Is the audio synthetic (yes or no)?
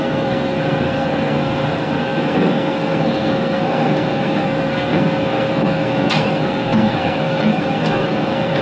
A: yes